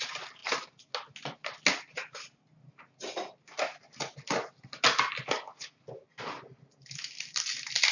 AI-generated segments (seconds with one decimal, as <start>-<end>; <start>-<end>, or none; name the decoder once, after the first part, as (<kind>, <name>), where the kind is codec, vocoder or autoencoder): none